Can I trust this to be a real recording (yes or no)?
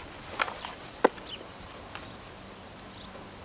yes